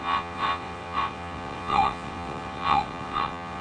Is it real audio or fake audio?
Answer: fake